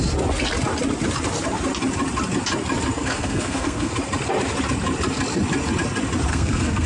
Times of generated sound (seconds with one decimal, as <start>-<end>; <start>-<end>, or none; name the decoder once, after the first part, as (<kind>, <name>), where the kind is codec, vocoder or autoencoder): 3.0-3.9 (codec, SNAC); 6.3-6.9